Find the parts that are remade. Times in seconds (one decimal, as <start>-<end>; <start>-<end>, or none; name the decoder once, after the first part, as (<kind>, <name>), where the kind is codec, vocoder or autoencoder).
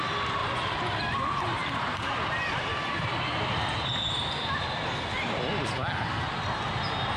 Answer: 0.4-0.9 (vocoder, BigVGAN v2); 1.6-5.9